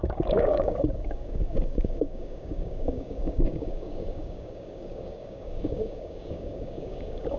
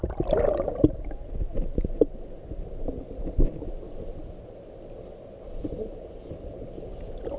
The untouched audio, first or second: second